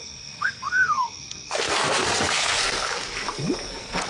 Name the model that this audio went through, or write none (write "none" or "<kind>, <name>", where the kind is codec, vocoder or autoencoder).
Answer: codec, SNAC